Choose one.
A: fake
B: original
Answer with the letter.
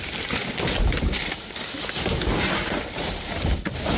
B